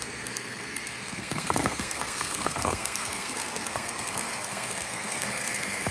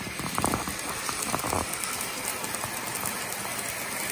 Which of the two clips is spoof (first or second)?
first